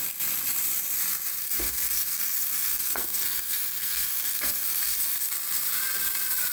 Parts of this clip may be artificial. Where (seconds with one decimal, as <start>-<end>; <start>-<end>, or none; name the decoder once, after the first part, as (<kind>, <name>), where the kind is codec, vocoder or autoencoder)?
1.4-5.3 (codec, SNAC)